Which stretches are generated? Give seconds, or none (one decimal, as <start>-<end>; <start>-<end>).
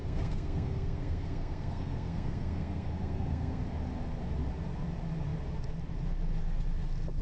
0.0-3.6